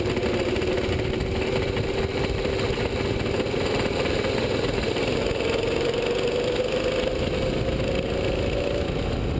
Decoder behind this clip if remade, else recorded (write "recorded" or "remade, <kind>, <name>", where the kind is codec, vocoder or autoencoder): recorded